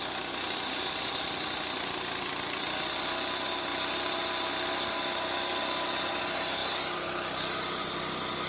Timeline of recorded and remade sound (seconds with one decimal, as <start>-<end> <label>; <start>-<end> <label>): 0.0-8.5 recorded